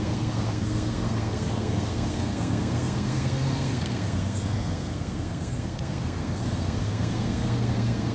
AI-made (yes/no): yes